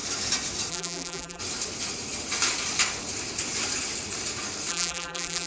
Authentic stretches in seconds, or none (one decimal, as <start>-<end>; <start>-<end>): 0.0-0.7; 1.4-4.7